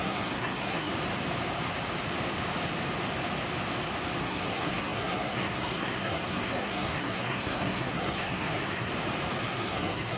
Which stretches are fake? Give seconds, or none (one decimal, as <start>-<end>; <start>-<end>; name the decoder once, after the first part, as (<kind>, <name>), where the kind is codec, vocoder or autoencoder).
0.0-0.9 (codec, SNAC); 4.2-8.9; 9.4-10.2

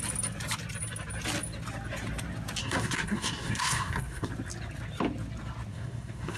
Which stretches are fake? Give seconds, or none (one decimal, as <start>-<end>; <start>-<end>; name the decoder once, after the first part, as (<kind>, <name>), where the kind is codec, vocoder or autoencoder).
2.6-4.3 (codec, SNAC); 5.7-6.4

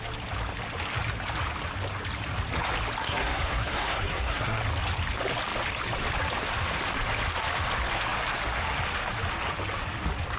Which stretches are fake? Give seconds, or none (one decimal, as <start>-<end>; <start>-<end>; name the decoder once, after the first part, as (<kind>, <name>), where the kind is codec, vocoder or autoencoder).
3.0-4.6 (codec, SNAC)

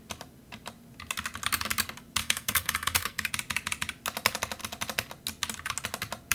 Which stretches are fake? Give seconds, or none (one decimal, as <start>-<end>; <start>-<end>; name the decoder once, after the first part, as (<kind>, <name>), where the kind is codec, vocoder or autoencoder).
2.2-3.3 (codec, SNAC)